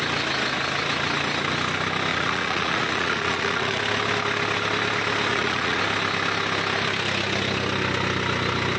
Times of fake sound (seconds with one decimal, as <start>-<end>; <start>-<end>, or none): 2.1-3.8; 5.3-5.8